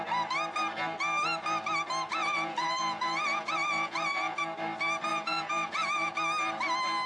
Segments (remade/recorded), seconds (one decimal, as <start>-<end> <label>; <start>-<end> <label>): 0.0-2.2 recorded; 2.2-4.4 remade; 4.4-5.1 recorded; 5.1-6.1 remade; 6.1-7.1 recorded